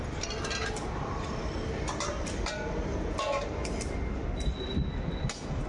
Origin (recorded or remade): recorded